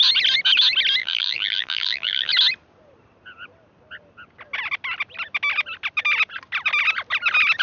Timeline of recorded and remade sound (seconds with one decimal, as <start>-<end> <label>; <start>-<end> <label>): 0.0-1.0 recorded; 1.0-2.3 remade; 2.3-7.6 recorded